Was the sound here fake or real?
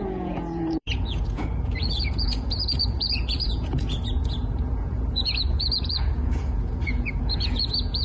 fake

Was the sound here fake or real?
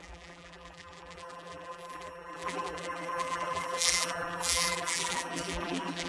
fake